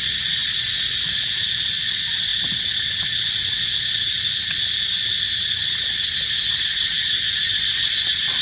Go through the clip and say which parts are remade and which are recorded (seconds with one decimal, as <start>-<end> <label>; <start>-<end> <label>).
0.0-8.4 recorded